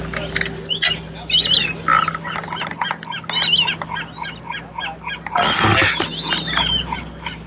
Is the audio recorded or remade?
recorded